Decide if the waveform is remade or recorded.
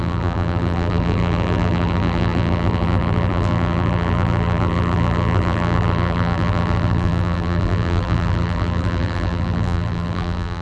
remade